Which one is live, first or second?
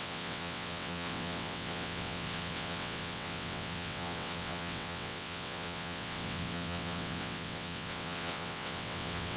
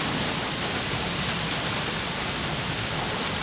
second